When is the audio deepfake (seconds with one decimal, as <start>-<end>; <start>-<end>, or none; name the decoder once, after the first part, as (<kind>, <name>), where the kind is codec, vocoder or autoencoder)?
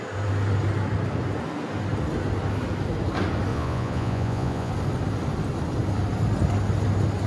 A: 3.5-4.7 (vocoder, Vocos)